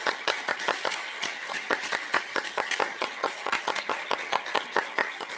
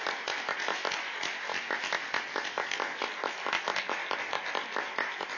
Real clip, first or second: second